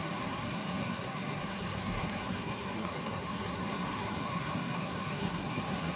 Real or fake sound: fake